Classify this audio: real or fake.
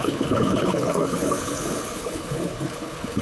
fake